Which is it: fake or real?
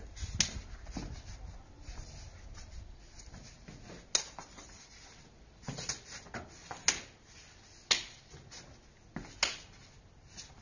real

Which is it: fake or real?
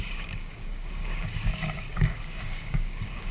fake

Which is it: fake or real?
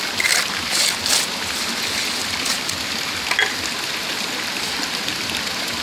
real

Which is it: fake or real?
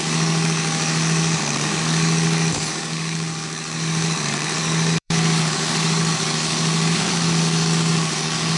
fake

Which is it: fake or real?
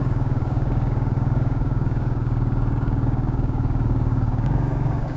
fake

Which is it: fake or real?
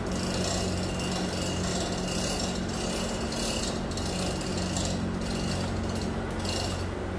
real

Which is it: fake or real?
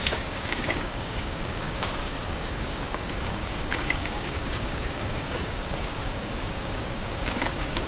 fake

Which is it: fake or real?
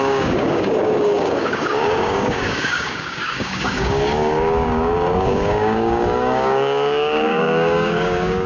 fake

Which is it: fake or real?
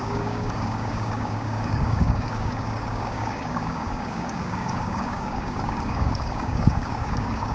fake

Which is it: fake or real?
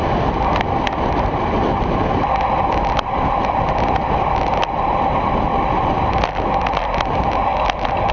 real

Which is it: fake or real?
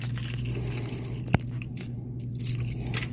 real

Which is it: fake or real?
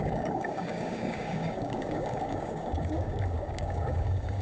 fake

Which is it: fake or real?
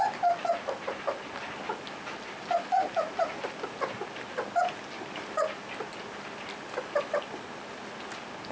real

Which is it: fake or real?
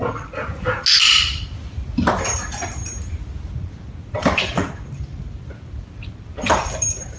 real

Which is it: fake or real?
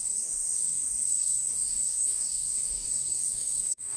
fake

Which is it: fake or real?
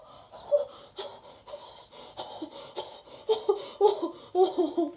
real